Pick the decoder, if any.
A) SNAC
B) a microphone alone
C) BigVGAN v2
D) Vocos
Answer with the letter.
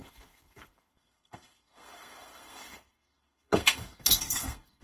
A